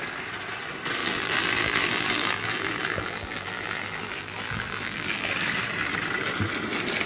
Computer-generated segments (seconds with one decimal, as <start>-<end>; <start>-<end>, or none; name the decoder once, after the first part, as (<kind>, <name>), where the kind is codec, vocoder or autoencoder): 1.0-5.3 (vocoder, BigVGAN v2)